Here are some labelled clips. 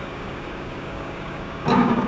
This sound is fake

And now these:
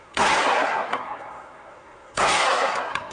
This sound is fake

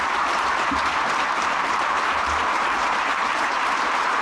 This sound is fake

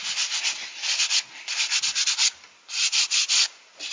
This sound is real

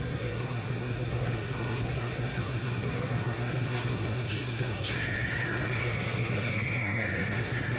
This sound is fake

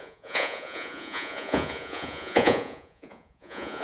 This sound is fake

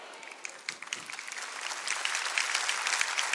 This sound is real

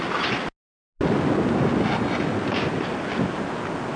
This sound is real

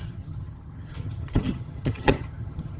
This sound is fake